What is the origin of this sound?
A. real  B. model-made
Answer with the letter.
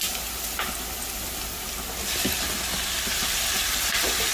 A